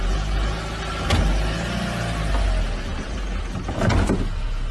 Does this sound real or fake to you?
real